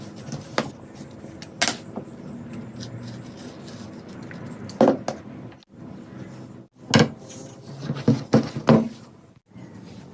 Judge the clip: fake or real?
real